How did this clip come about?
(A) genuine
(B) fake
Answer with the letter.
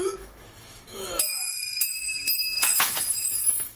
B